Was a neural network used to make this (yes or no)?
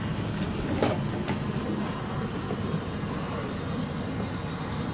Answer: no